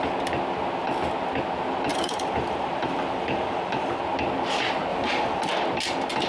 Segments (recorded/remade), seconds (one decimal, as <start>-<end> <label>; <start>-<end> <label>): 0.0-1.9 recorded; 1.9-4.0 remade; 4.0-4.9 recorded; 4.9-5.5 remade; 5.5-6.3 recorded